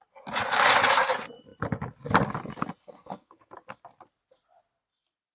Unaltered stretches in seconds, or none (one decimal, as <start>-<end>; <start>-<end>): 0.0-2.8; 3.5-5.3